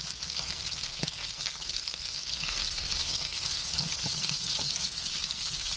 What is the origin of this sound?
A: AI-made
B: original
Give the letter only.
A